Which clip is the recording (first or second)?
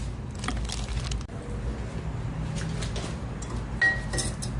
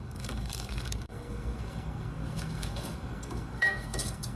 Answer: first